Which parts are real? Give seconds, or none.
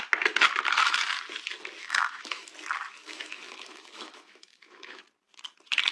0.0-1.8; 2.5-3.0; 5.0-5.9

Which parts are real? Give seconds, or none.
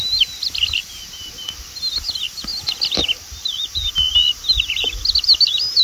0.0-5.8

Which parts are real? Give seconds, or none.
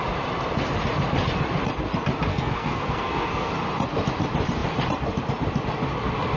0.0-2.3; 3.5-6.4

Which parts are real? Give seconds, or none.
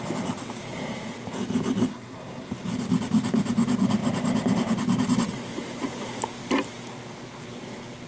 0.0-1.9; 2.5-8.1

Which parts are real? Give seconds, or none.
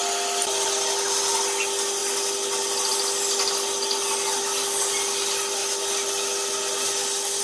0.0-7.4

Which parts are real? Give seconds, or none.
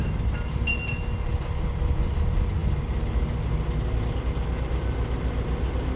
0.0-6.0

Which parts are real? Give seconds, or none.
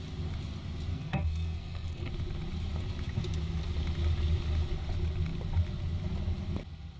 0.0-0.9; 2.1-7.0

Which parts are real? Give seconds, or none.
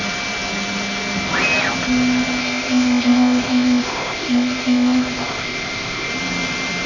0.0-2.4; 6.1-6.9